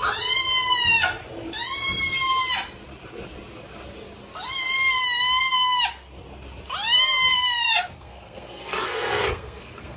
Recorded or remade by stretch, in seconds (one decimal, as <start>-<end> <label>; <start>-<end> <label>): 0.0-7.3 recorded; 7.3-10.0 remade